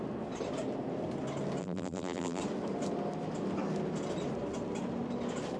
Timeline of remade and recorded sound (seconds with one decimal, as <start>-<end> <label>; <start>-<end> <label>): 0.0-1.6 recorded; 1.6-2.4 remade; 2.4-5.6 recorded